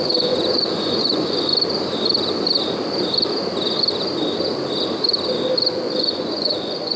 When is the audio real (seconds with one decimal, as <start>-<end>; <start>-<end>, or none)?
1.5-5.7